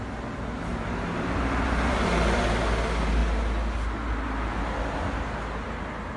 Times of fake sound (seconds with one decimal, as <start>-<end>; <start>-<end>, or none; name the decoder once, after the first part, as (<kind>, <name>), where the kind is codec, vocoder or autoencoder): 0.7-2.1 (vocoder, BigVGAN v2)